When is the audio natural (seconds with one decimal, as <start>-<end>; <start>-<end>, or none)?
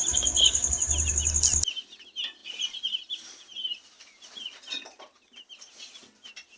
1.1-2.4; 3.1-3.5; 4.1-6.6